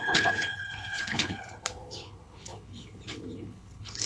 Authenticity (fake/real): fake